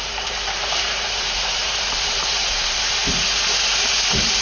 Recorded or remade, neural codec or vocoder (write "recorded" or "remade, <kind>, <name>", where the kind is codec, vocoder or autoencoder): remade, vocoder, BigVGAN v2